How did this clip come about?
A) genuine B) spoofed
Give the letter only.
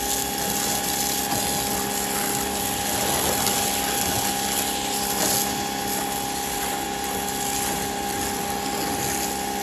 A